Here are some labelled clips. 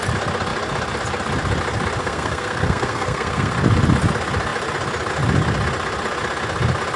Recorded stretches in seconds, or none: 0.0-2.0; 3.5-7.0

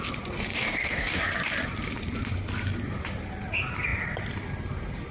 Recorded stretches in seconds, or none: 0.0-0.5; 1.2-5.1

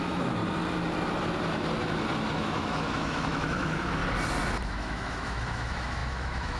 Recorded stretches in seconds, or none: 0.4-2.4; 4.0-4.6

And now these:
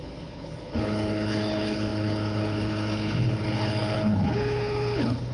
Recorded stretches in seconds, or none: none